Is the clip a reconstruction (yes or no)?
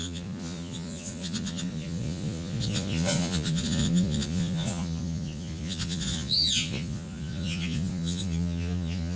yes